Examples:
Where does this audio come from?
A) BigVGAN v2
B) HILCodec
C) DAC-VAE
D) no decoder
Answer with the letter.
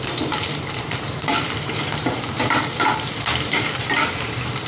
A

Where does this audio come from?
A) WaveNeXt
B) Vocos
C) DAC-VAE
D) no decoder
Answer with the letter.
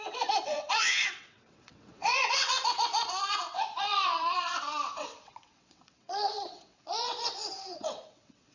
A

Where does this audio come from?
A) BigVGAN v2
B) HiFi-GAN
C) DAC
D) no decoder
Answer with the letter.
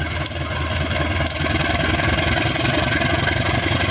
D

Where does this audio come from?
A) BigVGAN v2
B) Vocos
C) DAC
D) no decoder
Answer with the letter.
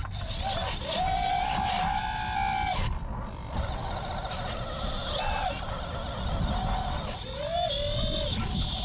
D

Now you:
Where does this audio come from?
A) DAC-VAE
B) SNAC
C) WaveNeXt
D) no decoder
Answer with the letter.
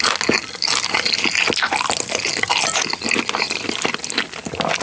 D